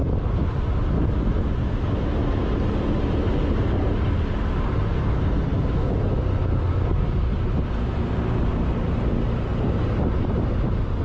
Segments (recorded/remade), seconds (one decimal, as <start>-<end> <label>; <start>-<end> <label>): 0.0-11.0 recorded